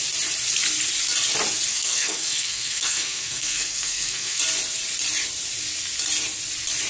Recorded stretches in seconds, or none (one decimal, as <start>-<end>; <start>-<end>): 0.0-1.7; 4.4-6.9